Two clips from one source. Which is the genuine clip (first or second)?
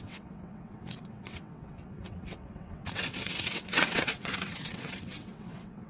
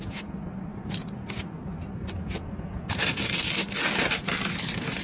second